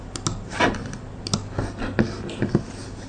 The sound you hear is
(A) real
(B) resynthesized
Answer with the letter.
A